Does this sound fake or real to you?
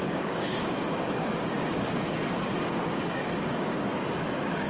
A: fake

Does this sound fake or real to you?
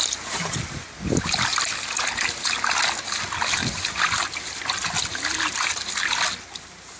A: real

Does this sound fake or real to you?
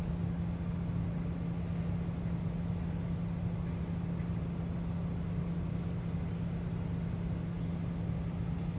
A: real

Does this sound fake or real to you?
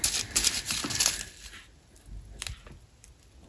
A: real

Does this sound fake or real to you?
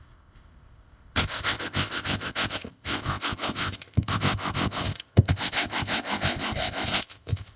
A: fake